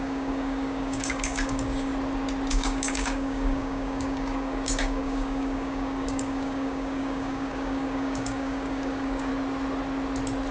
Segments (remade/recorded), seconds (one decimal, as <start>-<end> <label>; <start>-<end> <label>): 0.0-1.9 remade; 1.9-2.5 recorded; 2.5-9.3 remade; 9.3-10.5 recorded